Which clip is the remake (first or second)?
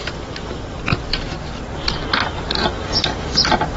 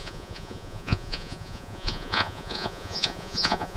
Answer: second